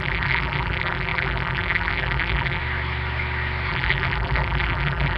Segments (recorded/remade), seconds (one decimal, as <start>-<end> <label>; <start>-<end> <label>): 0.0-2.6 remade; 2.6-3.7 recorded; 3.7-5.2 remade